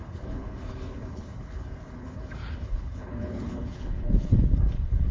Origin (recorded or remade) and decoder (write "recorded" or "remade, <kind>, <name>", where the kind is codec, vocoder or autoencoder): remade, codec, HILCodec